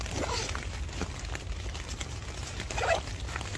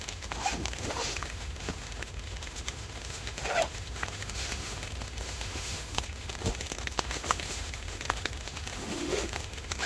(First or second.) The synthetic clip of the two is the second